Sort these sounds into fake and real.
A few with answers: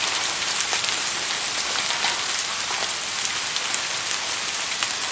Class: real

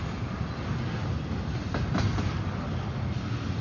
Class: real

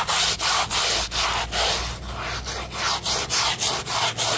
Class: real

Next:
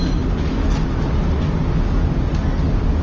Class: real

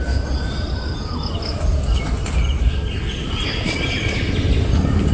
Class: real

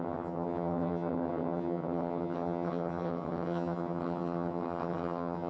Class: fake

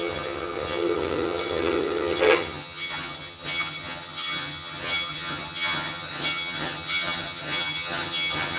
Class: fake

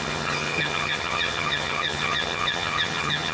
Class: fake